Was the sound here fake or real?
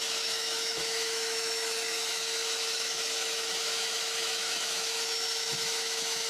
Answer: fake